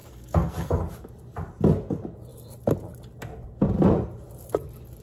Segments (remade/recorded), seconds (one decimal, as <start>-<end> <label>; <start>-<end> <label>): 0.0-0.8 remade; 0.8-5.0 recorded